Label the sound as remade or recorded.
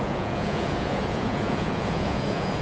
remade